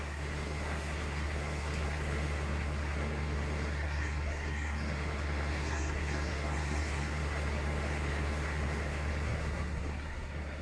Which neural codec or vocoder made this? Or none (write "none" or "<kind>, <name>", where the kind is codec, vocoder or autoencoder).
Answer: codec, SNAC